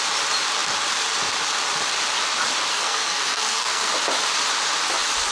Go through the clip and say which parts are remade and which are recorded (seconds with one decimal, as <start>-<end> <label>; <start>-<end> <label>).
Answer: 0.0-2.7 recorded; 2.7-3.9 remade; 3.9-5.3 recorded